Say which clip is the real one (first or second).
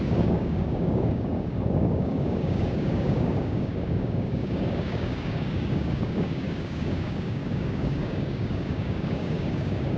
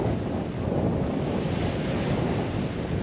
second